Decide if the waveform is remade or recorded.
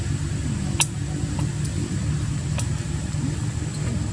recorded